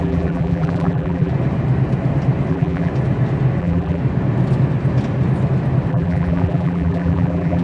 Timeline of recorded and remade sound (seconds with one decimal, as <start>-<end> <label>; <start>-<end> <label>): 0.0-1.3 remade; 1.3-2.5 recorded; 2.5-2.9 remade; 2.9-3.6 recorded; 3.6-4.0 remade; 4.0-5.9 recorded; 5.9-7.6 remade